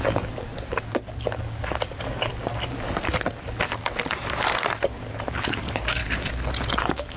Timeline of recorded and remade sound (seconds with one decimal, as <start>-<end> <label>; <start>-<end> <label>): 0.0-0.5 remade; 0.5-1.2 recorded; 1.2-2.3 remade; 2.3-5.3 recorded; 5.3-6.0 remade; 6.0-6.8 recorded; 6.8-7.2 remade